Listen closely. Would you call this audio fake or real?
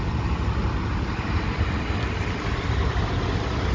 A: real